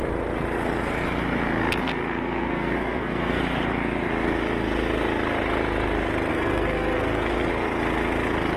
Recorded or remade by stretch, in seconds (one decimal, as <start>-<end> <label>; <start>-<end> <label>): 0.0-1.8 recorded; 1.8-3.4 remade; 3.4-6.3 recorded; 6.3-7.5 remade; 7.5-8.6 recorded